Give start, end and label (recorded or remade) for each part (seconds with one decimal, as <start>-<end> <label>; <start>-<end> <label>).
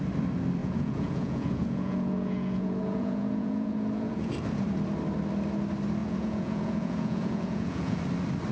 0.0-0.6 recorded; 0.6-4.3 remade; 4.3-6.0 recorded; 6.0-8.0 remade; 8.0-8.5 recorded